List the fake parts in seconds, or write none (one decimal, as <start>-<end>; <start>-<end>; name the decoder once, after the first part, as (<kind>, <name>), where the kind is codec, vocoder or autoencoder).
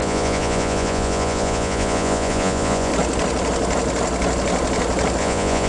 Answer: 0.0-2.9 (vocoder, Vocos); 5.2-5.7